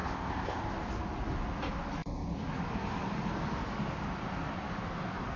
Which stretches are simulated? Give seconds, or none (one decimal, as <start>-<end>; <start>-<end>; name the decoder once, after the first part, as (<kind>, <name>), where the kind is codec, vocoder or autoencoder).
0.0-0.6 (codec, ZipCodec)